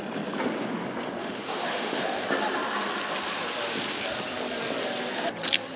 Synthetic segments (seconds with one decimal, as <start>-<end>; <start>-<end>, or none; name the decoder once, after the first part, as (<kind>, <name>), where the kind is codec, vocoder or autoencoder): 1.2-2.0 (autoencoder, DAC-VAE)